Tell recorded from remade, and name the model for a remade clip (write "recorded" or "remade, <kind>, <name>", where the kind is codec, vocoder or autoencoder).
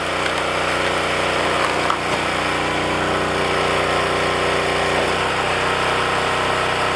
recorded